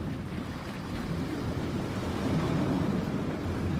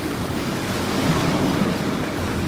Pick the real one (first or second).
first